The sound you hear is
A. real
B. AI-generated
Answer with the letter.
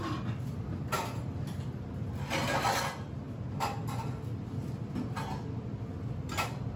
A